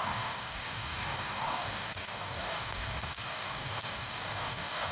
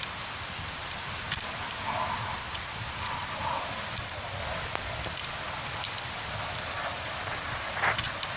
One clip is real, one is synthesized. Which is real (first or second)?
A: second